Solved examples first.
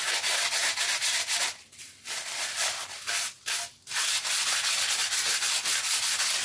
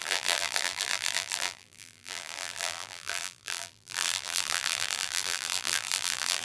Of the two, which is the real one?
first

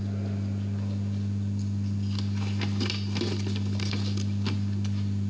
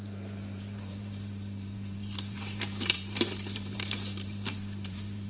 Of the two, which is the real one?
first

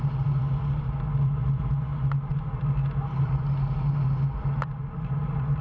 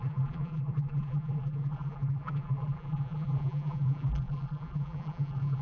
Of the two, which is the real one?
first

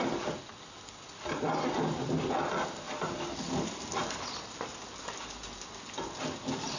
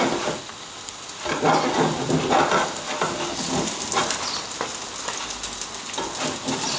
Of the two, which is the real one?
second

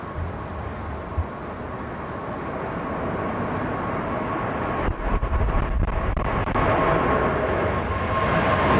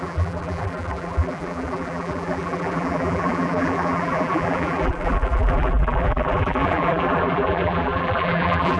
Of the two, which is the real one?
first